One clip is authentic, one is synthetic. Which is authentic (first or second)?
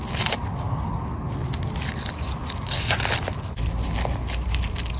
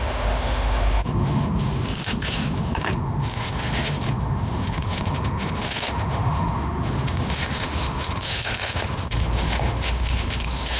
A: first